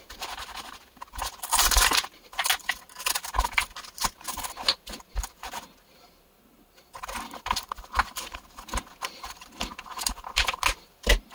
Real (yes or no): yes